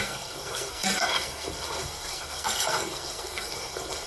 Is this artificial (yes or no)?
yes